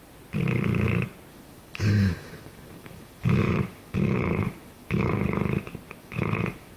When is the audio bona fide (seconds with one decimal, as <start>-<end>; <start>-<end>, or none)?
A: 0.0-1.3; 5.1-6.0